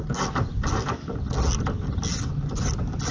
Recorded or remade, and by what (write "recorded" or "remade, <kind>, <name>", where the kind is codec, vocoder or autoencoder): recorded